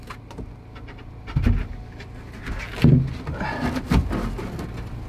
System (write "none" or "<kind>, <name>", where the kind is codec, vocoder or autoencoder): none